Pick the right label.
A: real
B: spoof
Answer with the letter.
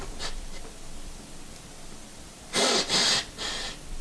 B